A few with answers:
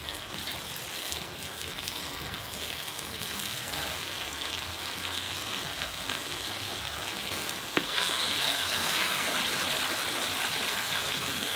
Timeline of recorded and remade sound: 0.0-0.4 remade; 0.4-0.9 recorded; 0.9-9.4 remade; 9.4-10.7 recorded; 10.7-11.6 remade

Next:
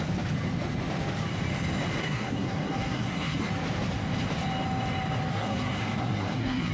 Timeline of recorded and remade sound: 0.0-2.0 recorded; 2.0-3.5 remade; 3.5-5.3 recorded; 5.3-6.7 remade